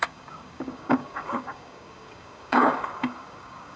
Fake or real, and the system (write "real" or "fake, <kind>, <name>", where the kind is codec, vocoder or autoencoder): fake, codec, DAC